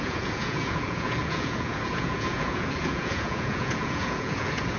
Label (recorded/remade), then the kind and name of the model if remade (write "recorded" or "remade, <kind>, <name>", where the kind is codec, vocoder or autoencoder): remade, vocoder, Vocos